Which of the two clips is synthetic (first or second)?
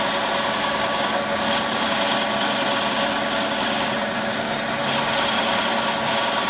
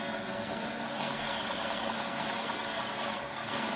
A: second